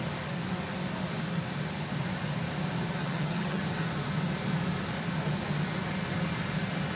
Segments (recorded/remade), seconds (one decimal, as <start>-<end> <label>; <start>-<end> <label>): 0.0-3.0 recorded; 3.0-3.6 remade; 3.6-7.0 recorded